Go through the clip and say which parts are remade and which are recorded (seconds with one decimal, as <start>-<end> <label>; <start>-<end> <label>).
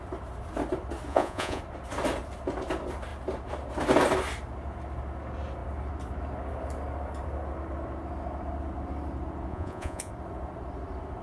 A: 0.0-1.1 recorded; 1.1-1.6 remade; 1.6-9.5 recorded; 9.5-10.1 remade; 10.1-11.2 recorded